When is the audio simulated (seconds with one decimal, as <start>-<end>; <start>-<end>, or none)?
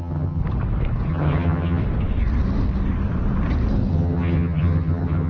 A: 0.0-0.4; 1.1-1.8; 3.9-5.3